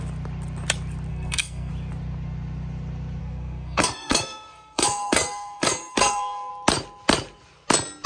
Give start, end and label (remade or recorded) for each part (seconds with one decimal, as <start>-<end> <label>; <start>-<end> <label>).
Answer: 0.0-1.1 recorded; 1.1-1.7 remade; 1.7-3.2 recorded; 3.2-6.5 remade; 6.5-8.1 recorded